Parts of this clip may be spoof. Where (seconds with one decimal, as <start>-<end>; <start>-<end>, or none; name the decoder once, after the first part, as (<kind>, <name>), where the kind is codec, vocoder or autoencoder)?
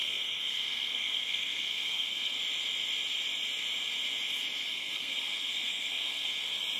0.0-2.4 (codec, SNAC); 4.7-6.3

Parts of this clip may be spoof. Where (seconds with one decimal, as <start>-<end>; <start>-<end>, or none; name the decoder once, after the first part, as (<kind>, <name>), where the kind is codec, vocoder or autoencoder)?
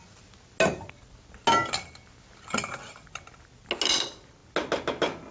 none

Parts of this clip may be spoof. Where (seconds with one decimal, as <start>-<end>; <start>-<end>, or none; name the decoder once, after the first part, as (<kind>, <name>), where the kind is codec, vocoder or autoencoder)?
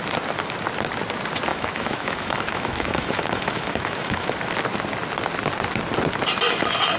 1.5-4.3 (autoencoder, DAC-VAE)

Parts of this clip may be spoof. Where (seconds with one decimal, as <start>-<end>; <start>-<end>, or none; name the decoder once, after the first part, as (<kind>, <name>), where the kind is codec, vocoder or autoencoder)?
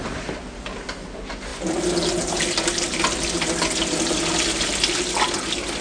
none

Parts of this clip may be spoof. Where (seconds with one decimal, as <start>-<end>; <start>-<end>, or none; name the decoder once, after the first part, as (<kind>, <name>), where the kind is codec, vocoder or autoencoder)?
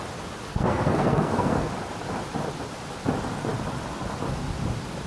0.5-1.7 (codec, SNAC)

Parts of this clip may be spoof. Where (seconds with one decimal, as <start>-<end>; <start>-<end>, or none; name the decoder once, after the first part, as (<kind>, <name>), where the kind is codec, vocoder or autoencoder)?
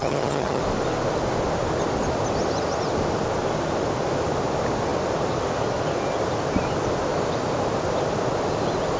0.0-0.6 (vocoder, HiFi-GAN)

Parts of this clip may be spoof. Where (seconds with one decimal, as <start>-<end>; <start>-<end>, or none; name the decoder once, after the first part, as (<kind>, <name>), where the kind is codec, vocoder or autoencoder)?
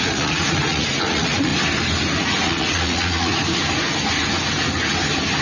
0.0-1.5 (vocoder, Vocos); 2.2-3.3